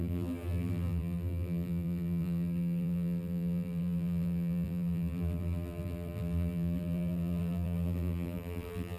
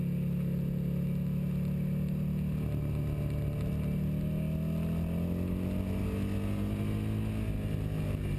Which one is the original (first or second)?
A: second